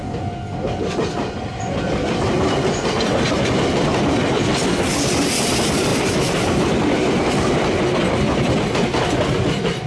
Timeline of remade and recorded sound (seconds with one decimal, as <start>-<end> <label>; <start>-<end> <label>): 0.0-9.9 recorded